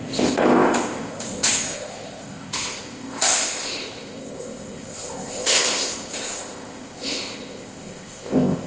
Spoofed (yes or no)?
yes